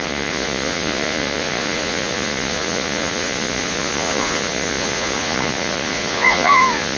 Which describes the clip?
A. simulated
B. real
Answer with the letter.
A